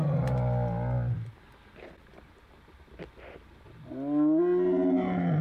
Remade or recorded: recorded